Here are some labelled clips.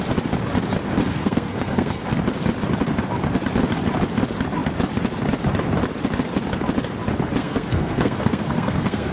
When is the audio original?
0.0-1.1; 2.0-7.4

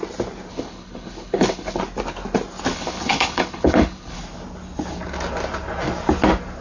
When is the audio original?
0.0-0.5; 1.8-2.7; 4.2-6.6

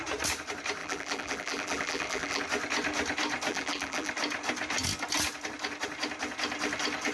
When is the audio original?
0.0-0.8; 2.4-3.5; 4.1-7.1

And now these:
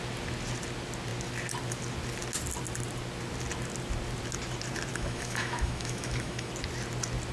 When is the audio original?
0.0-4.9; 6.5-7.3